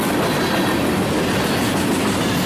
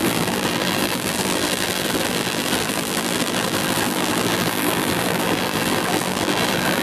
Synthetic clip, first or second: second